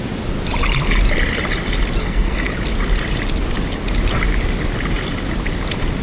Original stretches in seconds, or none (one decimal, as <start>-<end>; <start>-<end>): 0.0-2.0; 2.5-6.0